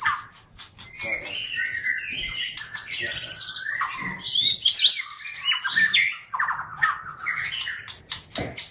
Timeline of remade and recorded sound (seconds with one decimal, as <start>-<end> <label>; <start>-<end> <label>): 0.0-6.7 recorded; 6.7-8.0 remade; 8.0-8.7 recorded